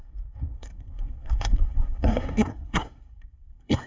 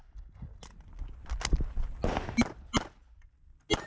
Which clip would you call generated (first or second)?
first